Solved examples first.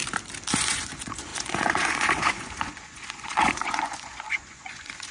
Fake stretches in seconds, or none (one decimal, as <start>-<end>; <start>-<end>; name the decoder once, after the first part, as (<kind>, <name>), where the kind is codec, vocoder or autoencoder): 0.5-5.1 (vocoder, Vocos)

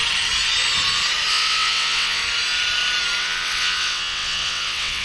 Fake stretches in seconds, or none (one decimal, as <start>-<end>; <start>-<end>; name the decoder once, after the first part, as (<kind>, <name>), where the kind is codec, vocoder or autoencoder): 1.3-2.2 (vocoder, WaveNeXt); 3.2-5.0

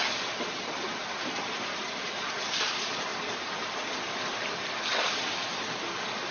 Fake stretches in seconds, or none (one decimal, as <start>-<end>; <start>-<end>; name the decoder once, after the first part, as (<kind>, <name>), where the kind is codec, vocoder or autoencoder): none

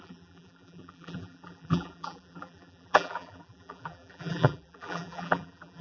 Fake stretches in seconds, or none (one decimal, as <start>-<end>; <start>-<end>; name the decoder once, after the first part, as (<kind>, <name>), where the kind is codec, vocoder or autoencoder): 0.0-5.8 (vocoder, BigVGAN v2)

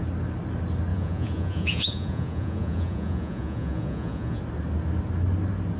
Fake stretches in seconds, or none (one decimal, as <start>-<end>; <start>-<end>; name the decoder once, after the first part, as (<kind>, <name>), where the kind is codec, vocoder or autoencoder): 0.9-4.4 (vocoder, Vocos)

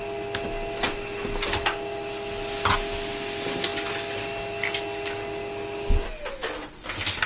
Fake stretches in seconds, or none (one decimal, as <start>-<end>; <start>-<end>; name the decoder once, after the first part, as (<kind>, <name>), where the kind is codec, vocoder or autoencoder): none